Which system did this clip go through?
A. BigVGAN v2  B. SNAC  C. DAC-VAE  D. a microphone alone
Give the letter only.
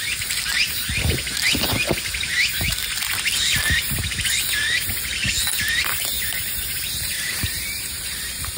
D